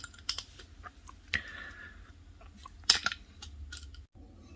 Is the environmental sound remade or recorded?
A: recorded